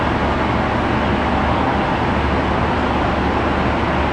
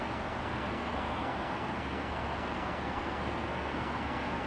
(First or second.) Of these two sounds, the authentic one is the first